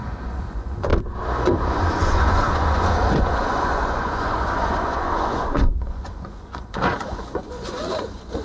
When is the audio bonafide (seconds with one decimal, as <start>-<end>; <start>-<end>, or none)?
0.9-1.4